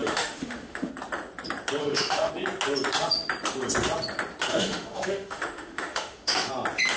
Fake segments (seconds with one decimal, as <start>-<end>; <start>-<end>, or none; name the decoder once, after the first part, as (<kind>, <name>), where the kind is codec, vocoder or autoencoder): 0.0-0.9 (autoencoder, DAC-VAE); 1.8-2.3; 4.5-6.5